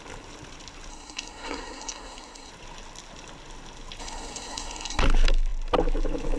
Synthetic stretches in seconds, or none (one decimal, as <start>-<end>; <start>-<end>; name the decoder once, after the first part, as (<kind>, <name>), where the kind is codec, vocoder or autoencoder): 0.9-2.5 (codec, SNAC); 4.0-5.0